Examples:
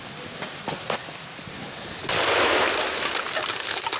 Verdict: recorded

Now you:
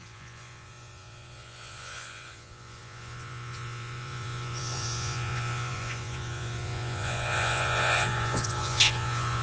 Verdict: remade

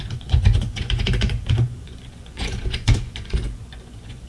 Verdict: remade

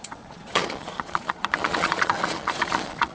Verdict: remade